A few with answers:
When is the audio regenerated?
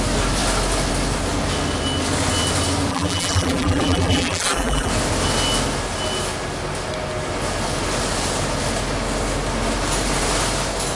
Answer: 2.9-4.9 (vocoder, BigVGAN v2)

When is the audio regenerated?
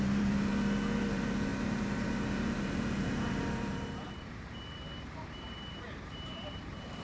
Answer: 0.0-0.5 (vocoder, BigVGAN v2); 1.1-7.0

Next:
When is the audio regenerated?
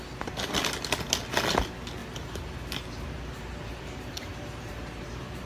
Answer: 2.0-5.5 (vocoder, BigVGAN v2)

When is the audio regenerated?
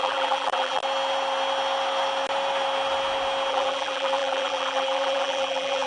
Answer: 0.0-0.8 (vocoder, BigVGAN v2); 3.5-5.9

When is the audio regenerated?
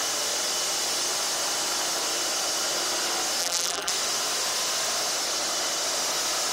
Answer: 3.4-3.9 (vocoder, BigVGAN v2)